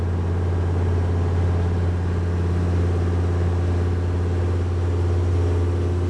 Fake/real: real